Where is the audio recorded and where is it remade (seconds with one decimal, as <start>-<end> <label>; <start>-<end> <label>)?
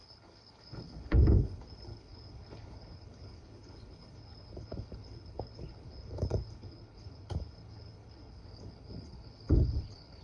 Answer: 0.0-10.2 remade